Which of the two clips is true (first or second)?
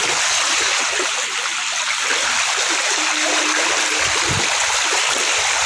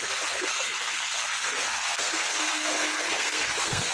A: first